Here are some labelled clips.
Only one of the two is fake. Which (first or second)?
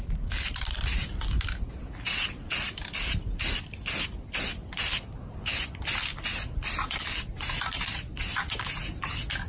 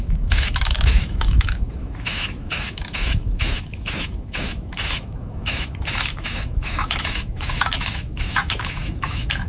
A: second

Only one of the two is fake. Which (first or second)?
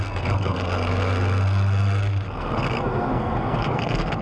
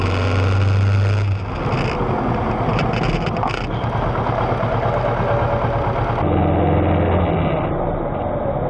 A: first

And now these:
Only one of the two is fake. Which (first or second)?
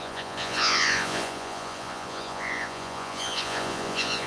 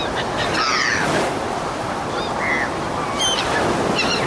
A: first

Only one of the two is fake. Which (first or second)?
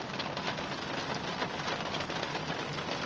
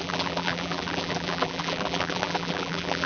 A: second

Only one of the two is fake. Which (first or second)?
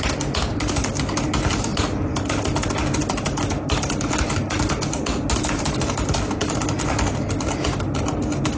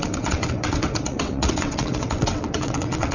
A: second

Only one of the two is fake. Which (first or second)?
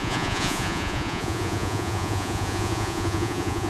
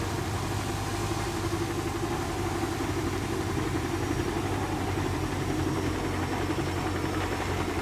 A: first